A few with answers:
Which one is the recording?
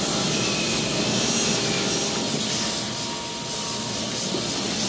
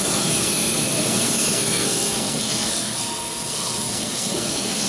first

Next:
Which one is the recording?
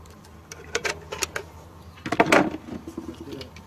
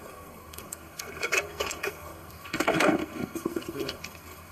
first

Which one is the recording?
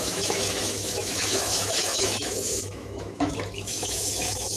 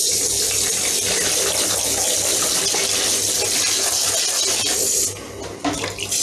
second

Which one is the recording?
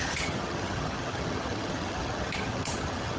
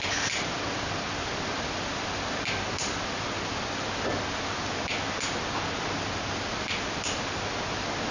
second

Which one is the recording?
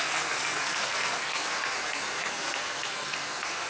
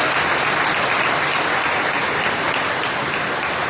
second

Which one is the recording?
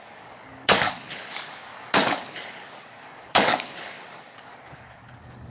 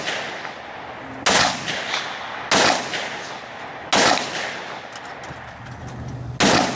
second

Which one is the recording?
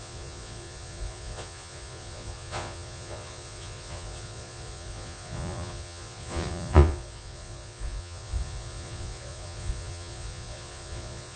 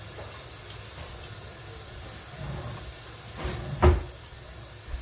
second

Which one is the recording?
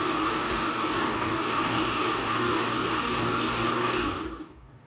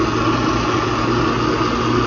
second